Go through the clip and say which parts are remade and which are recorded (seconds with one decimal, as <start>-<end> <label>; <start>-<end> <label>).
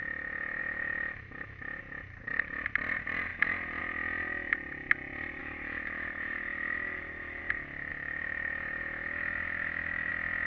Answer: 0.0-0.6 recorded; 0.6-1.8 remade; 1.8-5.4 recorded; 5.4-7.4 remade; 7.4-7.9 recorded; 7.9-10.1 remade; 10.1-10.5 recorded